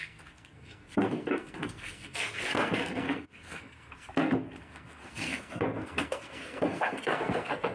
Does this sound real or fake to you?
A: fake